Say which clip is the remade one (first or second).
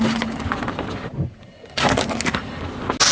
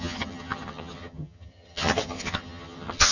second